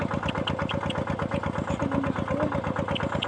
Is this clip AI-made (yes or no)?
no